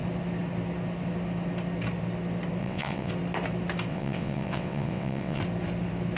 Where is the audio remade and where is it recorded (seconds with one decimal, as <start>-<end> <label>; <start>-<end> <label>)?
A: 0.0-2.6 recorded; 2.6-3.1 remade; 3.1-3.9 recorded; 3.9-5.4 remade; 5.4-6.2 recorded